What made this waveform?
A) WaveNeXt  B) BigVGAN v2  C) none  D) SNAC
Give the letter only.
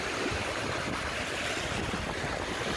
C